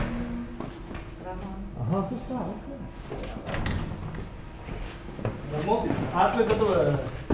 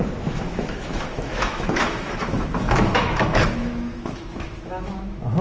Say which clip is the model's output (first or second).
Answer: second